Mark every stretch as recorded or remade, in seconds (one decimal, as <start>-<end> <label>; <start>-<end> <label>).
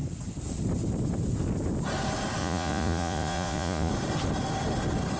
0.0-2.4 recorded; 2.4-3.9 remade; 3.9-5.2 recorded